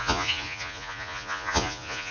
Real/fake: fake